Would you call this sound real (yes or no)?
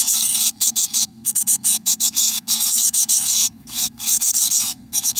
no